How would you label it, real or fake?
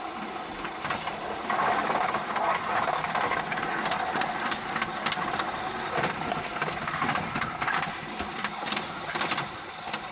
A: fake